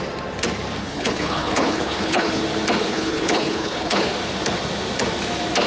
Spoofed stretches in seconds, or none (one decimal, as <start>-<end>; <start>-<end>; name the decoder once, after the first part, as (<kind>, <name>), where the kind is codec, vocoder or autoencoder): 0.8-2.4 (codec, HILCodec); 2.8-4.1